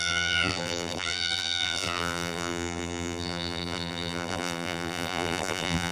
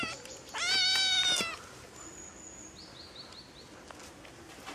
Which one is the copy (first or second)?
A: first